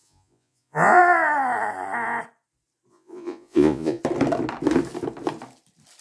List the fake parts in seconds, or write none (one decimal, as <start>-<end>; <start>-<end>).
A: 0.0-1.0; 2.9-4.0